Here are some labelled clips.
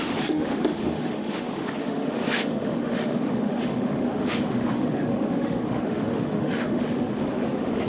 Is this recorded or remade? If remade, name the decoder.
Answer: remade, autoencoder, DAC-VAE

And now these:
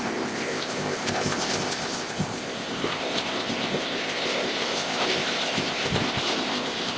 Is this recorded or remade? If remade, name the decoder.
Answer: remade, codec, ZipCodec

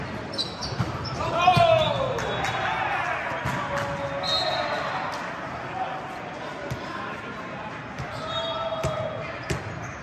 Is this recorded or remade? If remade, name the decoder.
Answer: recorded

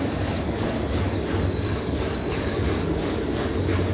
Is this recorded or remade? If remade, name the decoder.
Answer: remade, codec, DAC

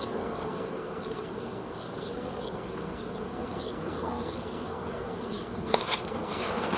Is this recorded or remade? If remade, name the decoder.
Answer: remade, codec, SNAC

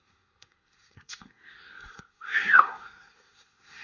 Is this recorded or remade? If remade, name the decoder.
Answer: remade, codec, SNAC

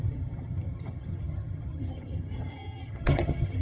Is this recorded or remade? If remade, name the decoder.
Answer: remade, vocoder, HiFi-GAN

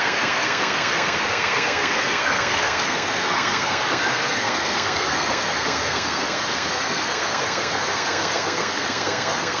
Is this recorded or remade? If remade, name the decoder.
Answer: remade, codec, SNAC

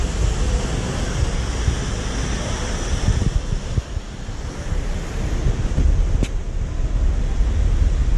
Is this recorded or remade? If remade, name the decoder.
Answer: recorded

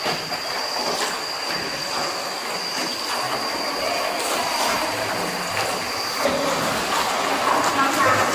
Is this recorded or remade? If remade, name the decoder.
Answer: recorded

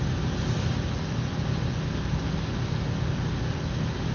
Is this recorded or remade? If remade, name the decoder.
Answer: recorded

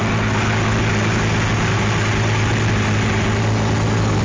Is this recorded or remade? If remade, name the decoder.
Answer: recorded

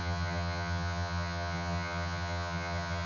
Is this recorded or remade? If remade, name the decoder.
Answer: remade, vocoder, HiFi-GAN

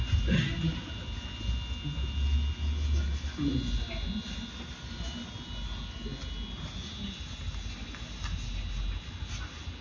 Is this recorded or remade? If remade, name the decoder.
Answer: recorded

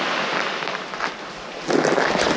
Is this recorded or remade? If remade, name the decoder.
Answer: remade, vocoder, BigVGAN v2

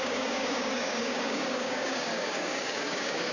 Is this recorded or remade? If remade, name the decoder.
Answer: remade, codec, DAC